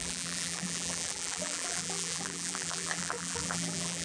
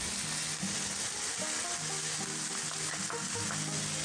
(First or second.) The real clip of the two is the second